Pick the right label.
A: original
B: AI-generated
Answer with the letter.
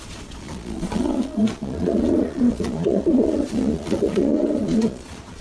B